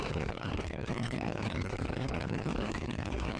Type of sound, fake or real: fake